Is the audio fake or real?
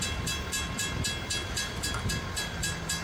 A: fake